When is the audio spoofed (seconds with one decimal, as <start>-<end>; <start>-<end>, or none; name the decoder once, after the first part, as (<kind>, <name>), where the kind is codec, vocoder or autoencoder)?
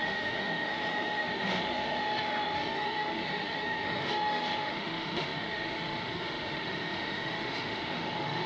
0.0-8.5 (autoencoder, DAC-VAE)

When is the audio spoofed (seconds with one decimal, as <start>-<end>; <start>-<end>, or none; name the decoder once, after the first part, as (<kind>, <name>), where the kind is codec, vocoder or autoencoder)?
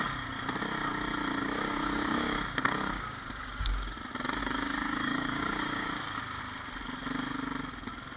1.4-4.0 (codec, DAC); 4.4-6.4